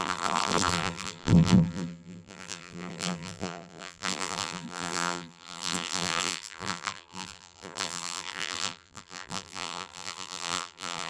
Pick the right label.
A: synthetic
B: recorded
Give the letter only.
A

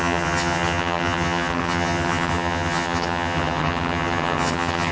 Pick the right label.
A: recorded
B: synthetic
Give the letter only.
B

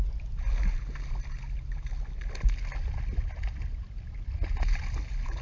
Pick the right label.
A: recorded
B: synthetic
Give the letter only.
A